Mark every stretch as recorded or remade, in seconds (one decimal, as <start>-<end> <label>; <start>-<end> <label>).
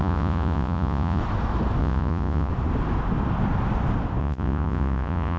0.0-1.2 remade; 1.2-1.8 recorded; 1.8-2.5 remade; 2.5-4.2 recorded; 4.2-5.4 remade